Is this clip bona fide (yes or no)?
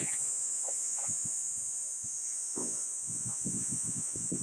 no